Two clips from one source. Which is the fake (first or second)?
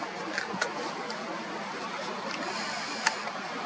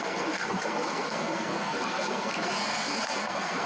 second